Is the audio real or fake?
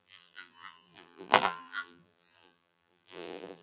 fake